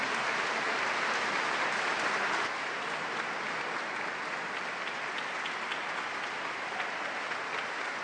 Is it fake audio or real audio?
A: real